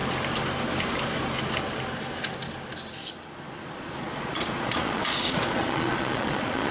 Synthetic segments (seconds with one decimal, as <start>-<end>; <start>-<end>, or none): 4.0-6.7